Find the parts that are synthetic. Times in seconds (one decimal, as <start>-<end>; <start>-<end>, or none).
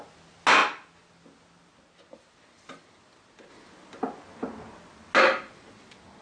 none